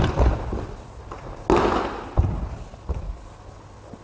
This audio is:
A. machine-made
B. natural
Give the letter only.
B